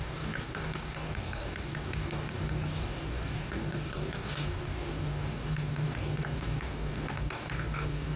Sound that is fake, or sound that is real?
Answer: fake